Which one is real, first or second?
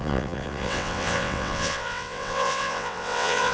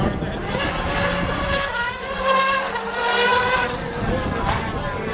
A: second